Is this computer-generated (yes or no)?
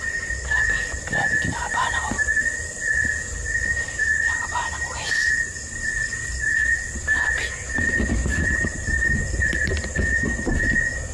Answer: no